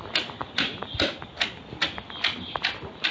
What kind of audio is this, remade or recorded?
recorded